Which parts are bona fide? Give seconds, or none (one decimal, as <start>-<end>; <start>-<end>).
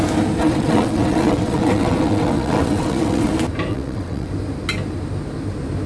0.0-0.4; 3.3-3.7; 4.3-5.9